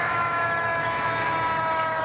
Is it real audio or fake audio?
fake